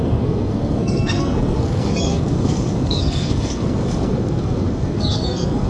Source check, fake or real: fake